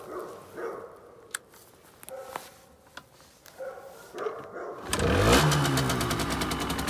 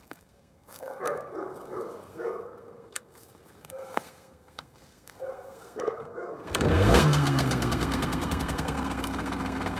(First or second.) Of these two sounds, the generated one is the second